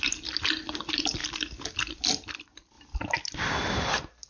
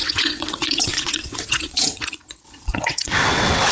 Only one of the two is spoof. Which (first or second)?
second